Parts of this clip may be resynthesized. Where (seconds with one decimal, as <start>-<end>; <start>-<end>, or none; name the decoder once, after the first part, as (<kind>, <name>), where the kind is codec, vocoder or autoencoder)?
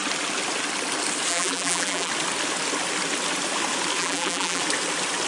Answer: 1.3-2.1 (vocoder, BigVGAN v2); 4.0-4.6